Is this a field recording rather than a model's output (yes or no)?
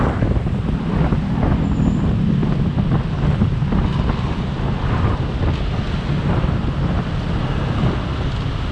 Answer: yes